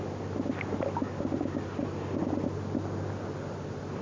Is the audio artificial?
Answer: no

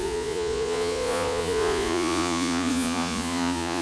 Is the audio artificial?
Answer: yes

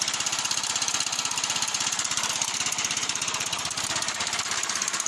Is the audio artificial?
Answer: yes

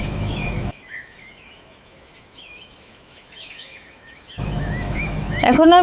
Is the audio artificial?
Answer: yes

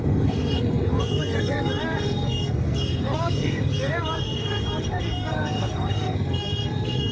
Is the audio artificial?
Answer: yes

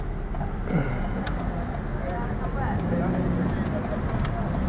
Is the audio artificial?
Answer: no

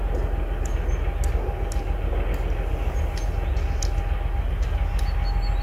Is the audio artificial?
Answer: no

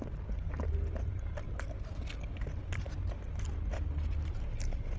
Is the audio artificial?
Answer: no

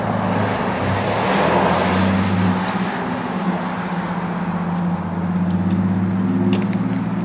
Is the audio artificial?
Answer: no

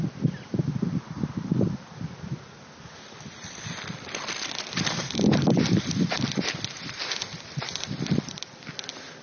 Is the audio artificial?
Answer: yes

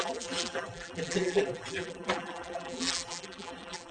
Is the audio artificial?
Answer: yes